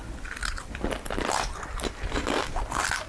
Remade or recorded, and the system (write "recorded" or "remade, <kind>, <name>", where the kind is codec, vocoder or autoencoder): recorded